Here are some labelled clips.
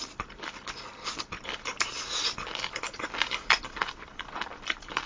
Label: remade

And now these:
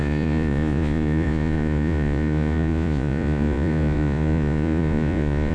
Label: remade